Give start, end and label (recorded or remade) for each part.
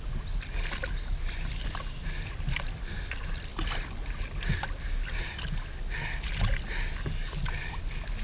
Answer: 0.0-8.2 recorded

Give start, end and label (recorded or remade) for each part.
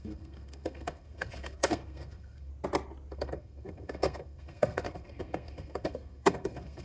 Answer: 0.0-2.5 remade; 2.5-3.1 recorded; 3.1-6.8 remade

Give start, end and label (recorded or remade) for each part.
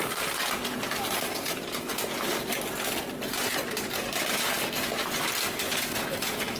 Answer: 0.0-1.9 remade; 1.9-5.9 recorded; 5.9-6.6 remade